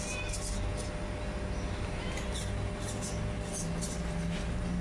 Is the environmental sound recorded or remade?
recorded